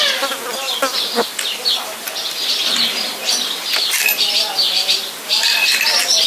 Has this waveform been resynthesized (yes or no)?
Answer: no